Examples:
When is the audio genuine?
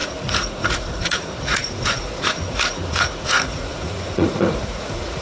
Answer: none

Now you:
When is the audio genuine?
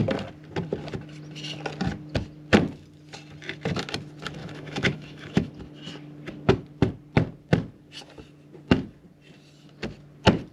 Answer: 0.0-4.4; 5.5-10.5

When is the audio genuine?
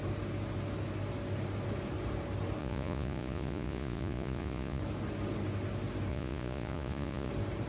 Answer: 0.0-2.6; 4.8-6.1; 7.3-7.7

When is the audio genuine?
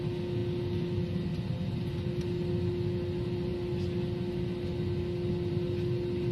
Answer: 0.0-6.3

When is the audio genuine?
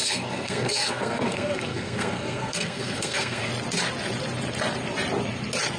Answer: 3.5-5.8